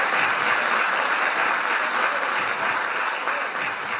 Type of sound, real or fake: real